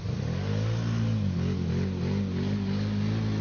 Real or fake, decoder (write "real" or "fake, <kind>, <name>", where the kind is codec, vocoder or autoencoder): real